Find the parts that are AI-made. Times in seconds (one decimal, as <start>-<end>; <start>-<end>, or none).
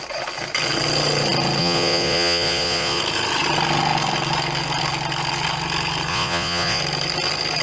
1.6-3.0; 6.1-6.8